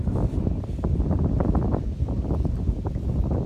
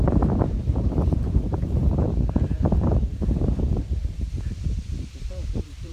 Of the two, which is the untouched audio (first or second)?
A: first